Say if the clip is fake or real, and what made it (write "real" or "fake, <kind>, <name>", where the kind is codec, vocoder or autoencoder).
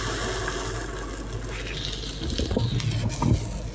real